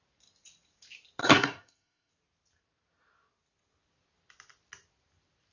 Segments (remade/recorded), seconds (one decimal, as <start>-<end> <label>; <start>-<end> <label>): 0.0-1.2 recorded; 1.2-2.1 remade; 2.1-5.5 recorded